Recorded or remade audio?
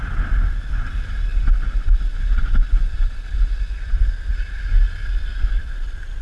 recorded